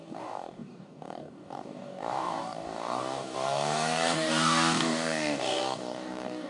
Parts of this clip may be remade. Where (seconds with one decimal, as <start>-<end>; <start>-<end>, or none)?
0.0-6.5